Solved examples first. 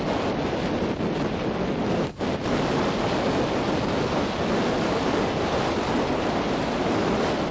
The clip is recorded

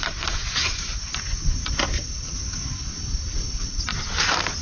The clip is recorded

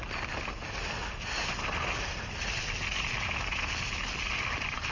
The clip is recorded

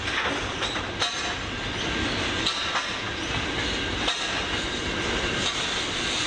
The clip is recorded